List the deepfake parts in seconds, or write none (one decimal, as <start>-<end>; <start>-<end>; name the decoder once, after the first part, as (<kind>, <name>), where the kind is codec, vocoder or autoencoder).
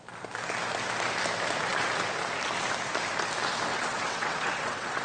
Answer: 3.7-5.0 (vocoder, WaveNeXt)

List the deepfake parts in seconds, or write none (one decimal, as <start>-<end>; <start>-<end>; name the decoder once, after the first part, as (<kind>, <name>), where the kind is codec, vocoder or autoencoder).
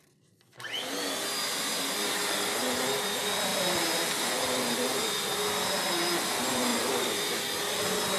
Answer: 3.5-4.3 (vocoder, BigVGAN v2); 6.7-7.3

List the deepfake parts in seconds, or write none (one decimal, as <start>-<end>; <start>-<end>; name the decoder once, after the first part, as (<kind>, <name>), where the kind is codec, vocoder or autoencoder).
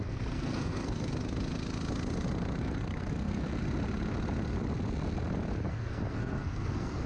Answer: 0.0-1.1 (codec, SNAC); 2.6-3.6; 5.7-7.1